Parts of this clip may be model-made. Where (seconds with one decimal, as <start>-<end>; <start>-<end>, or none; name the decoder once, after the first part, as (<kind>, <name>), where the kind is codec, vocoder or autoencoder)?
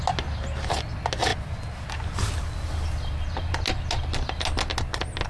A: none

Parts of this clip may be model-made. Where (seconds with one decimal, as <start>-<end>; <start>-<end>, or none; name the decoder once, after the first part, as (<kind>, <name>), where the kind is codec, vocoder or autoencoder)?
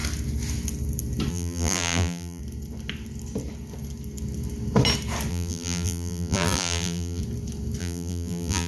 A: 1.3-2.4 (vocoder, BigVGAN v2); 5.3-7.2; 7.8-8.7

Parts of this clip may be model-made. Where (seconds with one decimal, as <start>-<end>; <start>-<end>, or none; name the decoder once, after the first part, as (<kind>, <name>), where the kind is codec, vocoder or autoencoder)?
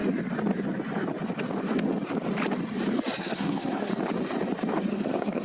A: 3.2-3.9 (codec, SNAC); 4.9-5.4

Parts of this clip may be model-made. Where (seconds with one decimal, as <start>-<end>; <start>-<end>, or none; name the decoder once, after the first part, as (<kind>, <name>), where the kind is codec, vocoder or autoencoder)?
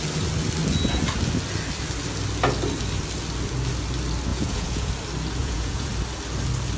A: 4.3-4.9 (vocoder, Vocos); 5.4-5.9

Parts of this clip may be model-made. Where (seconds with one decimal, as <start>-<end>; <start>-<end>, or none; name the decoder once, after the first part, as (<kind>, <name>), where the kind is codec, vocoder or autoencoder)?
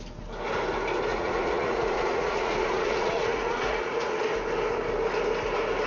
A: 1.1-4.2 (vocoder, Vocos)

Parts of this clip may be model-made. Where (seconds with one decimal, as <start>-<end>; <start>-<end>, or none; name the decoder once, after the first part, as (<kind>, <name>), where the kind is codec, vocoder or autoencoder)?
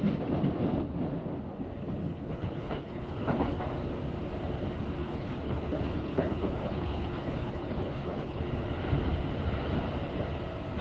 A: 2.0-3.6 (codec, HILCodec); 5.0-8.4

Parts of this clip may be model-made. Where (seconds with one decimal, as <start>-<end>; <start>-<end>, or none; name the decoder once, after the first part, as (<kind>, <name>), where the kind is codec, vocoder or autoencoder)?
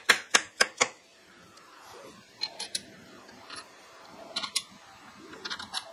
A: 1.1-4.6 (vocoder, BigVGAN v2)